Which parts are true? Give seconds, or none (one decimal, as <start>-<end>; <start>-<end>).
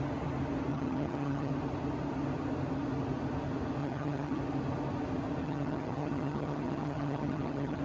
0.0-0.7; 1.5-3.8; 4.4-5.4